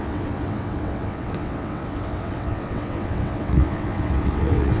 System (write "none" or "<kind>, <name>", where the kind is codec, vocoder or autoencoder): vocoder, WaveNeXt